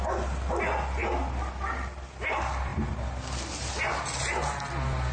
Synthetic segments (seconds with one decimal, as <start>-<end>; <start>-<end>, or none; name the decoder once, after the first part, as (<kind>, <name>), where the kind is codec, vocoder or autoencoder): none

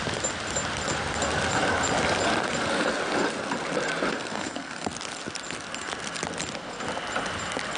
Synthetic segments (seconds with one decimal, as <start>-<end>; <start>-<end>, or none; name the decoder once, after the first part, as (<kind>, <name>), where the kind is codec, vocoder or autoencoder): 4.1-4.9 (codec, SNAC)

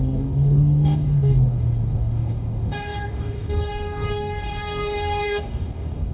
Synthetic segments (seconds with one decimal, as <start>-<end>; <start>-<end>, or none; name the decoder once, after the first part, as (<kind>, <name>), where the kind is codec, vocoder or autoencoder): 0.0-6.1 (codec, DAC)

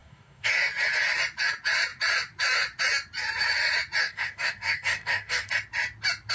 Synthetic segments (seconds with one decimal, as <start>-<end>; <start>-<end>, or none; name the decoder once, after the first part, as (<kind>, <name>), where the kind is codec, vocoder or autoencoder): 0.0-0.5 (codec, DAC); 4.0-5.5

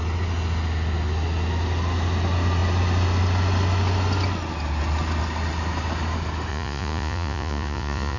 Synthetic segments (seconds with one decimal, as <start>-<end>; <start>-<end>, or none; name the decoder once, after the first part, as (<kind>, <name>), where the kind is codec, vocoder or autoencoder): 6.5-8.2 (vocoder, Vocos)

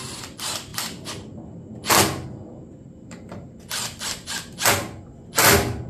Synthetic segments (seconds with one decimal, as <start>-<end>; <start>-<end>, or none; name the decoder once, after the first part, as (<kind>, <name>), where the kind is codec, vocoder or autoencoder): none

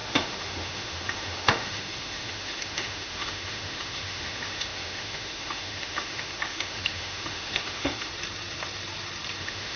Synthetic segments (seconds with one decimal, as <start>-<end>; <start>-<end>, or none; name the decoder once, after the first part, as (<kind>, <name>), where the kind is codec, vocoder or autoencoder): 0.0-8.1 (autoencoder, DAC-VAE); 9.4-9.8

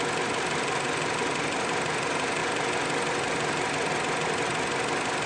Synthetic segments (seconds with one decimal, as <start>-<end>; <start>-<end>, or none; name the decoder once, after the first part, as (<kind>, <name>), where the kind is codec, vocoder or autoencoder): none